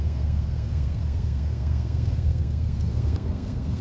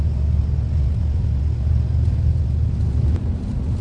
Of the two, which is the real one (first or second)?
second